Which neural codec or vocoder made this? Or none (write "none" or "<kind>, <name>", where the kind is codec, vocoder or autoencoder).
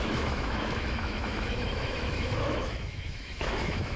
autoencoder, DAC-VAE